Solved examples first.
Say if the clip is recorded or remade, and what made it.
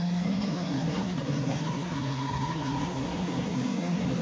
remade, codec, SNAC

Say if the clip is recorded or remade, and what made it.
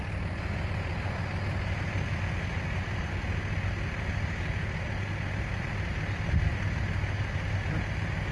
recorded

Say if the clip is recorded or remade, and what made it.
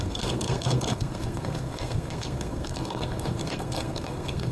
remade, codec, SNAC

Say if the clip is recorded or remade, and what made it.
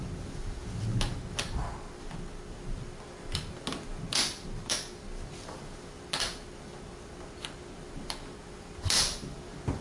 recorded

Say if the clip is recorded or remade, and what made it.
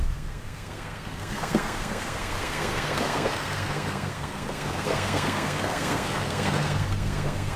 remade, codec, SNAC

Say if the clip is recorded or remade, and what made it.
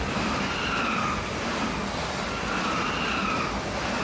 recorded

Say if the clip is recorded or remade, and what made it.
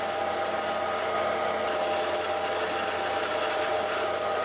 recorded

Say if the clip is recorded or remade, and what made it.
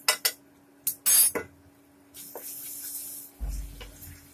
recorded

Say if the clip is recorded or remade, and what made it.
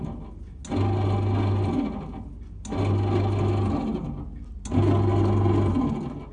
recorded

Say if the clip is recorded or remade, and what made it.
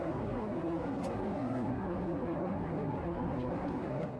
remade, codec, SNAC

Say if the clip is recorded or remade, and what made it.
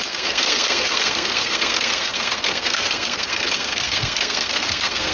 remade, codec, SNAC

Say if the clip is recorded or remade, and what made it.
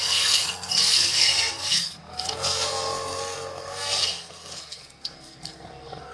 remade, codec, SNAC